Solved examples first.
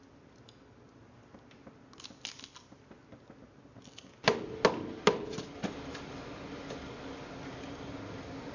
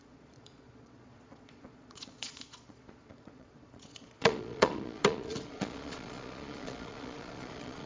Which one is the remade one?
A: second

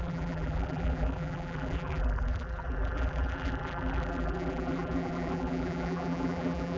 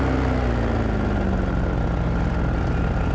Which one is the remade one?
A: first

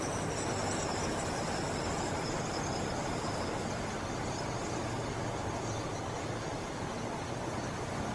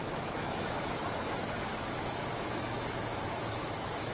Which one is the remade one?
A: second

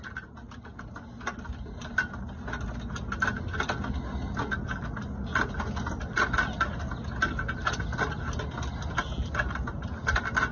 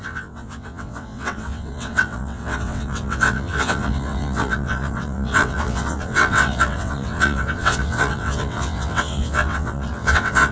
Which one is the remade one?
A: second